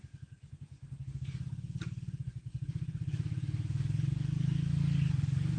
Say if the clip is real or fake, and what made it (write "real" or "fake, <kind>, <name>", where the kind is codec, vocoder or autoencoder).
fake, codec, DAC